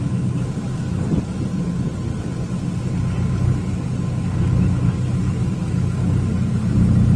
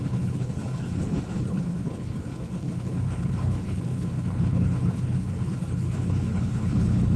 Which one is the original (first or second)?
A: first